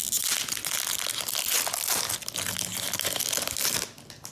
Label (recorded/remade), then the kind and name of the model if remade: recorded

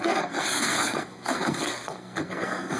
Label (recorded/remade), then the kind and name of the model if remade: remade, codec, SNAC